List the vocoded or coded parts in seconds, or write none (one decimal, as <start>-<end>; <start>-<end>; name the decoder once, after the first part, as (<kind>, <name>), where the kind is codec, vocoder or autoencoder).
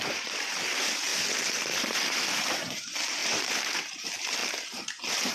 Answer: 0.0-5.3 (vocoder, BigVGAN v2)